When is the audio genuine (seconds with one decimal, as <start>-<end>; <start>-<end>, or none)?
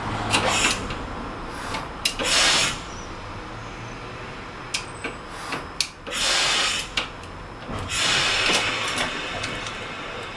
0.0-2.2; 3.5-10.4